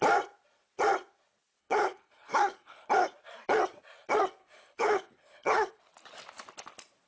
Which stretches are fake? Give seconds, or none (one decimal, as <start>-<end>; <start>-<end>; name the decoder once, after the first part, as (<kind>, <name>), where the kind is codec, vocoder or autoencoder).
1.6-2.9 (codec, HILCodec); 4.4-5.8